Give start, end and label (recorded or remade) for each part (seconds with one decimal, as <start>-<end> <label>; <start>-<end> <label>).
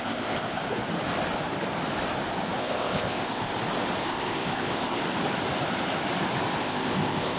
0.0-0.6 remade; 0.6-2.6 recorded; 2.6-3.5 remade; 3.5-4.0 recorded; 4.0-5.0 remade; 5.0-6.6 recorded; 6.6-7.4 remade